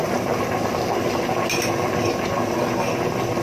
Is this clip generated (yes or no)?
no